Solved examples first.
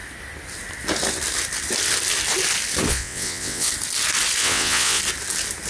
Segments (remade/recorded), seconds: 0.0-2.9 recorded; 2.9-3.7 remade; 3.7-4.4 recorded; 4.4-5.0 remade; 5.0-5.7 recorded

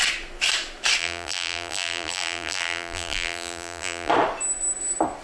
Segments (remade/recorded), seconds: 0.0-1.0 recorded; 1.0-4.1 remade; 4.1-5.2 recorded

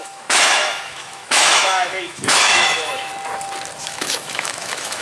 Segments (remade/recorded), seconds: 0.0-3.1 remade; 3.1-3.8 recorded; 3.8-5.0 remade

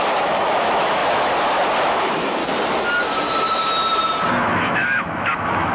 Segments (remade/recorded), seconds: 0.0-1.0 remade; 1.0-1.8 recorded; 1.8-2.4 remade; 2.4-4.3 recorded; 4.3-5.7 remade

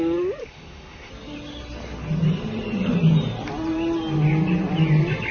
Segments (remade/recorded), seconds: 0.0-0.4 recorded; 0.4-1.1 remade; 1.1-5.3 recorded

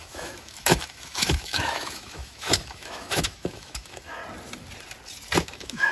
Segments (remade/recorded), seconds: 0.0-4.2 remade; 4.2-5.4 recorded; 5.4-5.9 remade

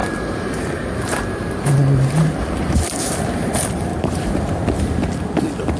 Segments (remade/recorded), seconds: 0.0-3.5 remade; 3.5-3.9 recorded; 3.9-4.6 remade; 4.6-5.8 recorded

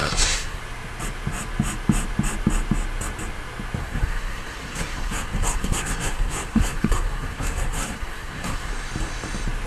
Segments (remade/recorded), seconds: 0.0-0.6 remade; 0.6-3.8 recorded; 3.8-8.7 remade; 8.7-9.7 recorded